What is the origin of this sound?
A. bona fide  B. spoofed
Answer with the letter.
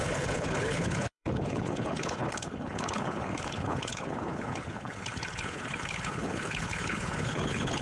B